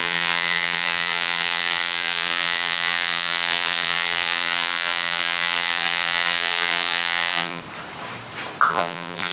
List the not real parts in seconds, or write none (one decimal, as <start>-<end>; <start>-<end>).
0.0-7.6; 8.7-9.3